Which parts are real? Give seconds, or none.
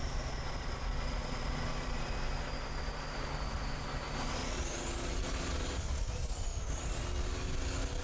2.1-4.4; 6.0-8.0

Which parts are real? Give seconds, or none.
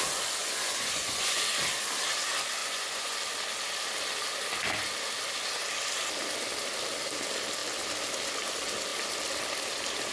0.0-0.4; 1.4-2.6; 3.2-10.1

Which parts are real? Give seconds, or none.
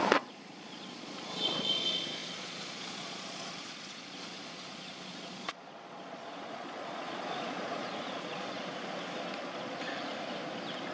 8.6-9.4; 10.1-10.9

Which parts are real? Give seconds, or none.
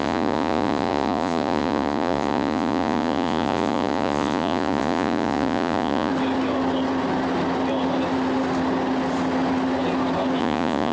6.1-10.4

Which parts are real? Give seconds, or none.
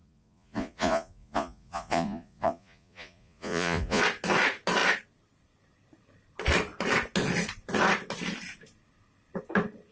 4.0-9.9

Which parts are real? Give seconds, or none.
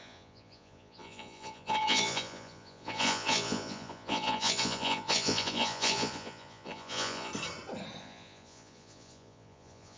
7.3-8.0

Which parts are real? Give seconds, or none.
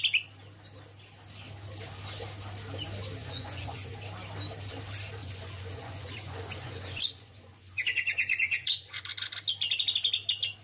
0.0-3.2; 3.9-5.2; 9.1-10.6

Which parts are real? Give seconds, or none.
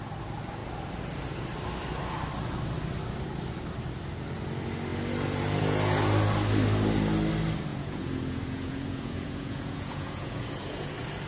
0.0-7.7; 10.9-11.3